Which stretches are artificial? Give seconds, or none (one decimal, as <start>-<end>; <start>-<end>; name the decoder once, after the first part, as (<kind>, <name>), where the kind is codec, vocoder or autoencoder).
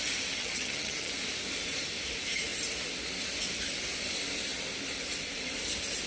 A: 0.4-1.1 (vocoder, HiFi-GAN)